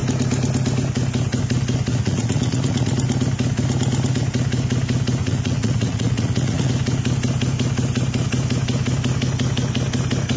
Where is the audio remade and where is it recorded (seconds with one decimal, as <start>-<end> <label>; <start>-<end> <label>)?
0.0-1.9 recorded; 1.9-2.9 remade; 2.9-5.2 recorded; 5.2-6.7 remade; 6.7-10.4 recorded